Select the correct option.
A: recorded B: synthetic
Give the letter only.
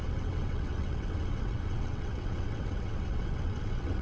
B